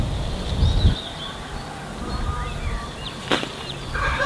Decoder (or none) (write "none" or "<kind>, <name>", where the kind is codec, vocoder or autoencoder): vocoder, BigVGAN v2